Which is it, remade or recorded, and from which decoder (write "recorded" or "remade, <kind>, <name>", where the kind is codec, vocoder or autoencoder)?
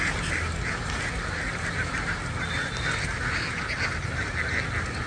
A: recorded